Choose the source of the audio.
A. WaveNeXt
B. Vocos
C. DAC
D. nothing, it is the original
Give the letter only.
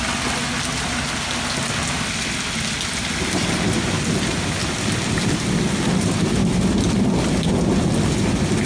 D